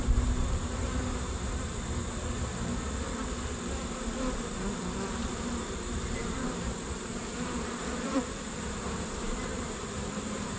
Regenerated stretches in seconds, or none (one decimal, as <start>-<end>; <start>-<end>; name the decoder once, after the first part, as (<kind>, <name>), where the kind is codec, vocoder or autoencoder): 0.0-2.0 (vocoder, BigVGAN v2); 5.2-10.6